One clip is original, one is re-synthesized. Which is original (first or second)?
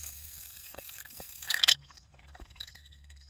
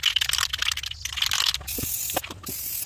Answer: second